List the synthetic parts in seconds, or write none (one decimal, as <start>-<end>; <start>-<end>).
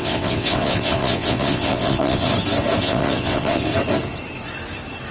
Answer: 0.0-2.3; 2.8-3.7